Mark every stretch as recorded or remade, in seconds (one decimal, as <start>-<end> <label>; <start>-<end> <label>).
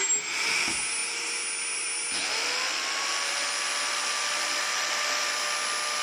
0.0-6.0 recorded